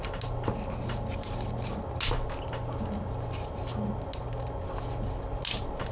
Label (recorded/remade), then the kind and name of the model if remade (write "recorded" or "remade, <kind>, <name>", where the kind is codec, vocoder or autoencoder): recorded